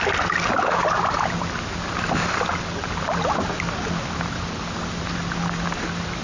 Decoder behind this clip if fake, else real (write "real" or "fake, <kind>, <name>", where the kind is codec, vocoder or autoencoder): real